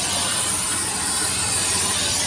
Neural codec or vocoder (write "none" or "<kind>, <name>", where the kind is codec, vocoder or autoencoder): none